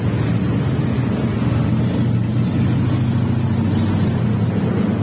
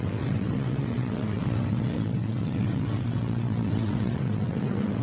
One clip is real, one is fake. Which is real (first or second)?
first